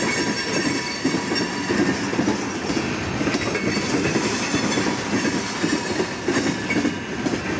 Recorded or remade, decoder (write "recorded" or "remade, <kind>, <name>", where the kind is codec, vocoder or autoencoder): recorded